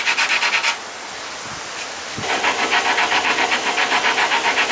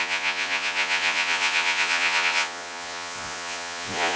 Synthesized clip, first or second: second